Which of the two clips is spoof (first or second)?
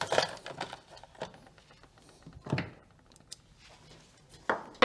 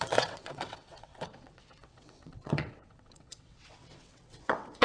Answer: second